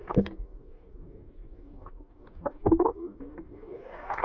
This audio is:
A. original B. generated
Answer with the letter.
B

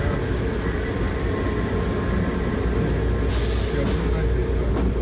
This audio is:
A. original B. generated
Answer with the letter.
A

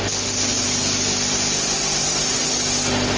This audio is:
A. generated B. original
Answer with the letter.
B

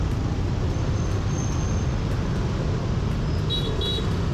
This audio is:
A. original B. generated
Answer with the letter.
A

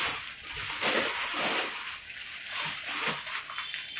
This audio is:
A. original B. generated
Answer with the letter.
A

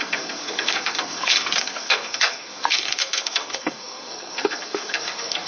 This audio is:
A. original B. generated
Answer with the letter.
B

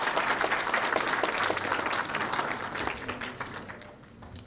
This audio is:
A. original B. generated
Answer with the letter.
A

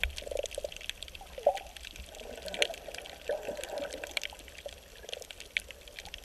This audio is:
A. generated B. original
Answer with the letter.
B